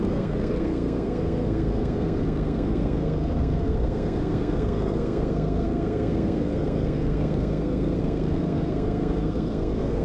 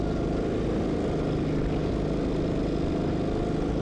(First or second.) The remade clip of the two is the first